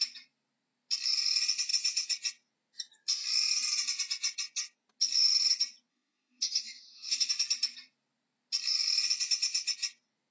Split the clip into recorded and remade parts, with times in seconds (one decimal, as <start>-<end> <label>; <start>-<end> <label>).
0.0-5.9 recorded; 5.9-7.3 remade; 7.3-10.3 recorded